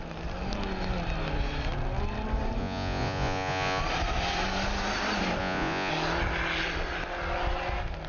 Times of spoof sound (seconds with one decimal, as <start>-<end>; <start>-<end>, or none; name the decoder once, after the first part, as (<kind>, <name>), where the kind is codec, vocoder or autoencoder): 2.6-3.8 (vocoder, Vocos); 5.4-5.9